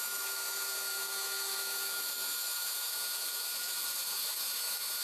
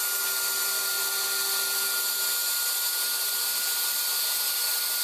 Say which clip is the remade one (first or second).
first